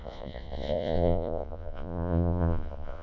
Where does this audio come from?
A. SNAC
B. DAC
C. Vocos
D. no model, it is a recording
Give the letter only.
C